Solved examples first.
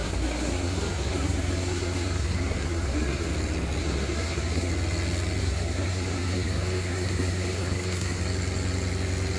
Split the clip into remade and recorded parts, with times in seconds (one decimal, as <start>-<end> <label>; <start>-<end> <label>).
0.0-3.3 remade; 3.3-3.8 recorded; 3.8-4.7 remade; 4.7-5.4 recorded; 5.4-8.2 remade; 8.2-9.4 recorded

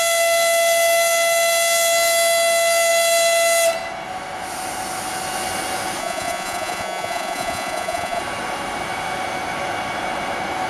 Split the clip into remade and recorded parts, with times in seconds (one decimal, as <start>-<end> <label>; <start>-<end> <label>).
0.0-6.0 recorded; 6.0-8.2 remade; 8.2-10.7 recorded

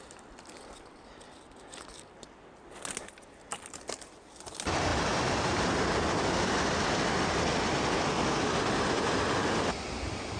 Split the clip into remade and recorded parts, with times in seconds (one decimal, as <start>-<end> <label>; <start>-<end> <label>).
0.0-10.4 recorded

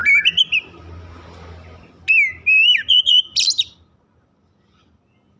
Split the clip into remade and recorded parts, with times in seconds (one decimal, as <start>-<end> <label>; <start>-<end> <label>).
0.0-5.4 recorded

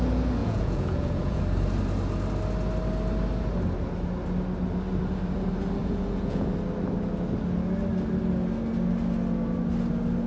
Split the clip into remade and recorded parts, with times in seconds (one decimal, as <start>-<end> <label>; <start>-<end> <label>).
0.0-0.4 recorded; 0.4-1.4 remade; 1.4-5.8 recorded; 5.8-6.5 remade; 6.5-10.3 recorded

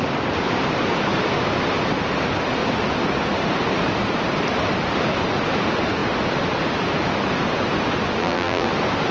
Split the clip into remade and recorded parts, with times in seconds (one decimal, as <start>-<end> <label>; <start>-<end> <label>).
0.0-8.2 recorded; 8.2-8.7 remade; 8.7-9.1 recorded